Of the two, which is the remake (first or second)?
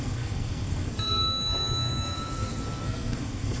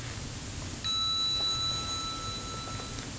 first